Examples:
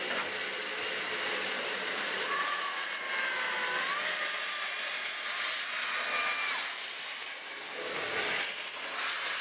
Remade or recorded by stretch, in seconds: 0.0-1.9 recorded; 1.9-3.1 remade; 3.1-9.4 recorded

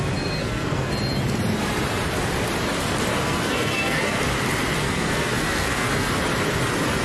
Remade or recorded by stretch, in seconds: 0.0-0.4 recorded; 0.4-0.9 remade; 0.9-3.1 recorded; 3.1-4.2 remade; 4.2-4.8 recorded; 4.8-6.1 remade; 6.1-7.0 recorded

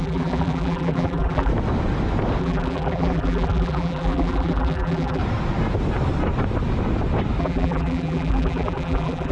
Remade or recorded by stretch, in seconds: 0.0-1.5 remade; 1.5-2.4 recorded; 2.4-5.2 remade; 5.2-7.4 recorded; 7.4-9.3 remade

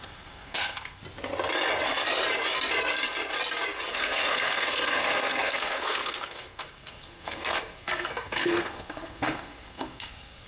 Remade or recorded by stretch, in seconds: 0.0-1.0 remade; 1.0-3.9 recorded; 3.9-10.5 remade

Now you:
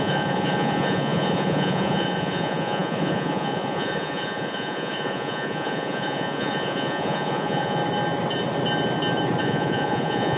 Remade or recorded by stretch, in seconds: 0.0-7.8 remade; 7.8-9.4 recorded; 9.4-10.4 remade

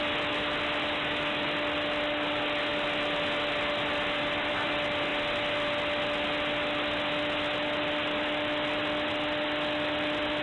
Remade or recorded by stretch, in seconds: 0.0-10.4 recorded

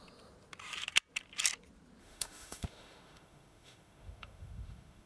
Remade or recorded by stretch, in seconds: 0.0-2.0 recorded; 2.0-5.1 remade

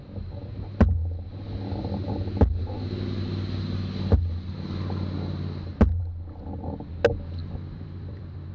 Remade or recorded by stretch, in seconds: 0.0-7.4 recorded; 7.4-8.5 remade